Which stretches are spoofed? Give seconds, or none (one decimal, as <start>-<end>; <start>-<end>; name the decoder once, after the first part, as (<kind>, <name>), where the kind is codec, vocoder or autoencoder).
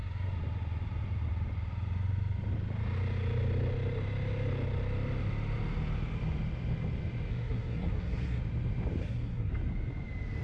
7.3-8.4 (codec, SNAC); 9.0-9.5